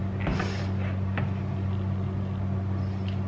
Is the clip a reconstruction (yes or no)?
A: no